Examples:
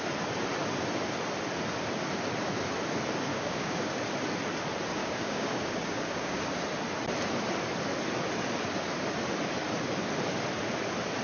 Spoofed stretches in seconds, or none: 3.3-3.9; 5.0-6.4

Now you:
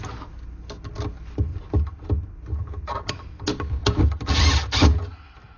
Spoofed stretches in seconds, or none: 3.5-4.0

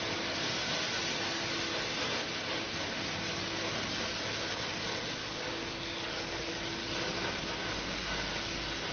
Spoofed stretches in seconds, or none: 5.2-6.8

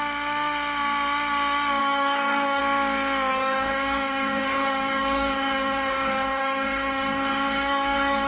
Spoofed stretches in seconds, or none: 1.8-2.6; 3.3-8.3

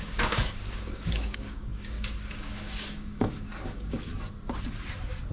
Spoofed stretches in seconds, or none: 0.0-4.1

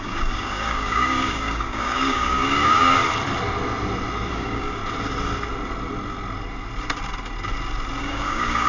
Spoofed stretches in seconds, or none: 0.0-3.0; 4.3-4.8; 8.0-8.7

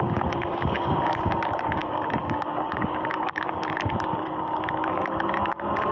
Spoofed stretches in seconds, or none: 0.0-5.9